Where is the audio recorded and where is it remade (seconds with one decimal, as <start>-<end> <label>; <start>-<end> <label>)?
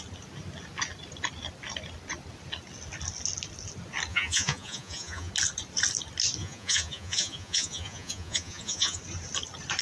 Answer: 0.0-4.1 recorded; 4.1-5.3 remade; 5.3-6.4 recorded; 6.4-9.0 remade; 9.0-9.8 recorded